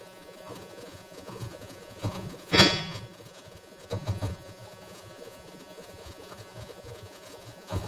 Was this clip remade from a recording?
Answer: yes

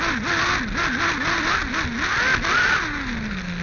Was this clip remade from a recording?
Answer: no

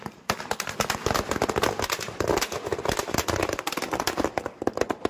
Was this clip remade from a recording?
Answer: no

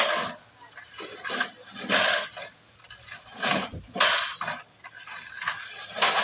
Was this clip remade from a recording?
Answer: no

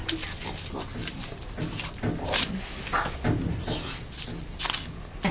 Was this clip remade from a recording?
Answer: no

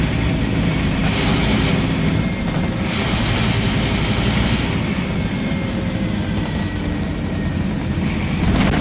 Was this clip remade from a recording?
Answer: no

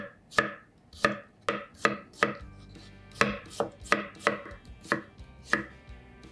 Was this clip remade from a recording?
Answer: no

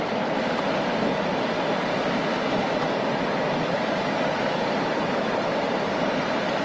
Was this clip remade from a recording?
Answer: no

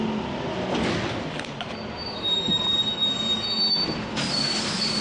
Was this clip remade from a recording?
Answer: no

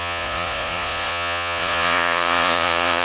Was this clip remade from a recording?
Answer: yes